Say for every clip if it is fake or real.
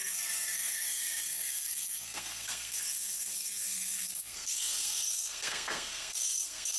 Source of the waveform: fake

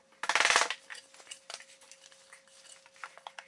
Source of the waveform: real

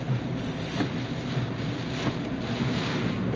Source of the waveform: real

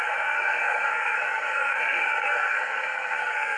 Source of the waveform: fake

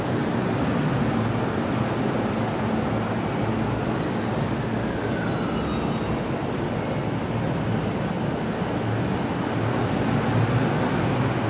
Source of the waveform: real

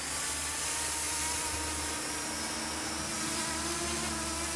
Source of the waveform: real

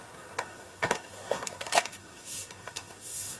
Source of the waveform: fake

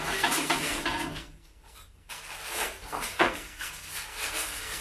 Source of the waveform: fake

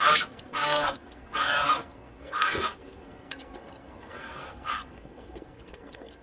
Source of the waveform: fake